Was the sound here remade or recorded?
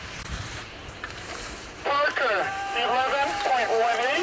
remade